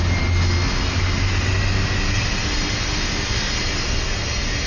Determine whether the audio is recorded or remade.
recorded